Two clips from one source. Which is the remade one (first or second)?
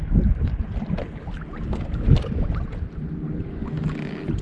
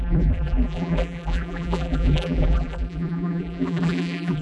second